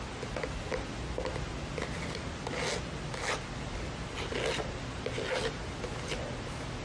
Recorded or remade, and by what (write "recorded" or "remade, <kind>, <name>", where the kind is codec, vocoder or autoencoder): recorded